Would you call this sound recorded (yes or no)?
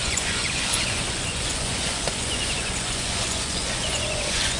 no